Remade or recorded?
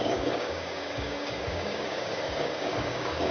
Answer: remade